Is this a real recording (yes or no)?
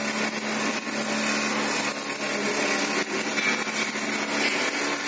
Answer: yes